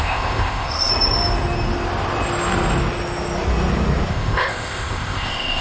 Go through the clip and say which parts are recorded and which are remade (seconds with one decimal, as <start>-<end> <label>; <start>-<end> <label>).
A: 0.0-0.9 remade; 0.9-4.1 recorded; 4.1-5.6 remade